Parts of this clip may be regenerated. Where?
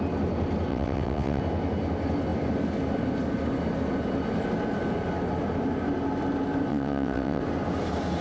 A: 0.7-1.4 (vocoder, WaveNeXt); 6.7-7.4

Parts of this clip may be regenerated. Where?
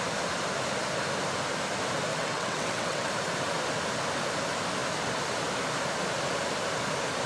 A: 2.1-3.1 (vocoder, WaveNeXt)